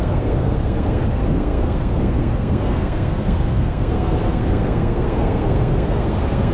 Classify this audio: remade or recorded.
remade